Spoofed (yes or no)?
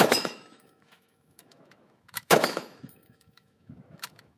yes